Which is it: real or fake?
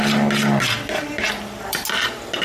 real